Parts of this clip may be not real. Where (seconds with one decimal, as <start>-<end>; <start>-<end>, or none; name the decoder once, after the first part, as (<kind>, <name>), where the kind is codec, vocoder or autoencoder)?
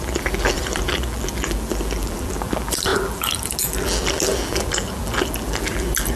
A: 0.0-6.2 (vocoder, BigVGAN v2)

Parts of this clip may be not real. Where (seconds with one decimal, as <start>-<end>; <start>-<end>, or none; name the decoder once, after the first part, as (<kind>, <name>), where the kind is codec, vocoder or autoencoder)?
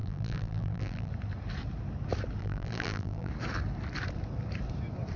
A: 0.0-1.1 (vocoder, BigVGAN v2); 2.4-3.3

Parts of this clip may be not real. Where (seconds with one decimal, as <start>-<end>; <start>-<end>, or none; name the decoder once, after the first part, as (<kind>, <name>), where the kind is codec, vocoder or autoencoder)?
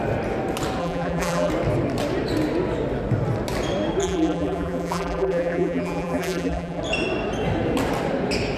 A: 0.8-1.5 (vocoder, BigVGAN v2); 4.0-6.8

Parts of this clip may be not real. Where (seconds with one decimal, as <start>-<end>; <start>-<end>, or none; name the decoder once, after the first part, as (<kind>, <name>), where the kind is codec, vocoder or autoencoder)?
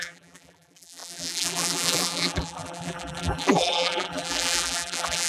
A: 0.0-5.3 (vocoder, BigVGAN v2)